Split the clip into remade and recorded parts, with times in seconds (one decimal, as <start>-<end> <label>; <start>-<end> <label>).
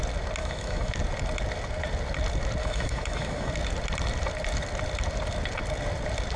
0.0-0.4 recorded; 0.4-0.9 remade; 0.9-2.6 recorded; 2.6-3.5 remade; 3.5-6.4 recorded